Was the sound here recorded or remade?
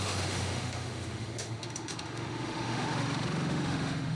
remade